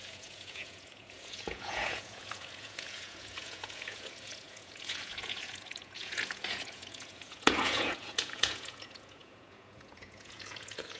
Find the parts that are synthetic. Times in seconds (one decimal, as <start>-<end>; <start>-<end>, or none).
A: 0.0-11.0